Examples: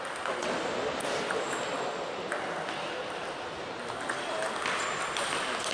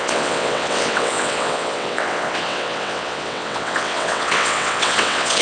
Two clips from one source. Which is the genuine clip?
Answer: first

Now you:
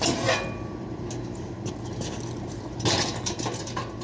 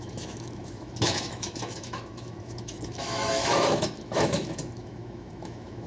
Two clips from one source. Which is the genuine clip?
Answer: first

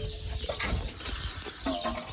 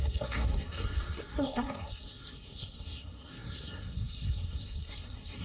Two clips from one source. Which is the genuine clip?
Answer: first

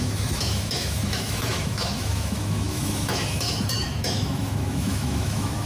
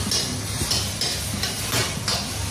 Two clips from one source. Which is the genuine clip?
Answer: second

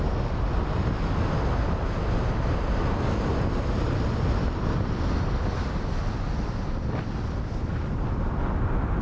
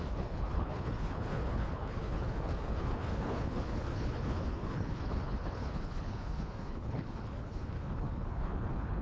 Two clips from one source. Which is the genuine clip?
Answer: first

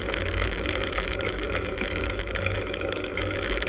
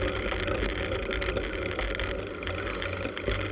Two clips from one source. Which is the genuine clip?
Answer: second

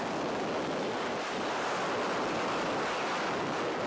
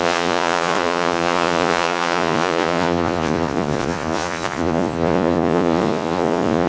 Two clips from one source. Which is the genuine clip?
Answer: first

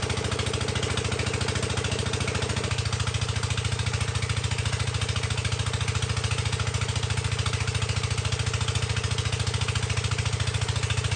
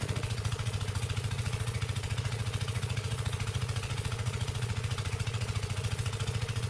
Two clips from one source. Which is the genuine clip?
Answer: first